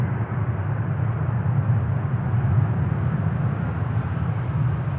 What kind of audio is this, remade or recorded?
recorded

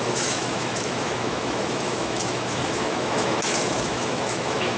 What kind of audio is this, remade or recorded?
remade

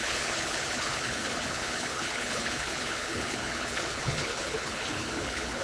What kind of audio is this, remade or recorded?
remade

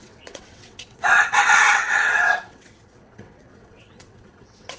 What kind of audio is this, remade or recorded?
remade